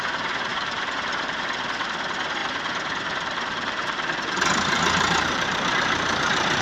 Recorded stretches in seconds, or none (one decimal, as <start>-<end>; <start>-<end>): 0.0-0.5; 1.9-2.4